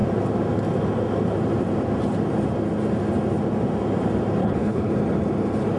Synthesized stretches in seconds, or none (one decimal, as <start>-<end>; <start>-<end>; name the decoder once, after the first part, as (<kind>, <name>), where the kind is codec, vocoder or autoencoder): 4.4-4.9 (codec, HILCodec)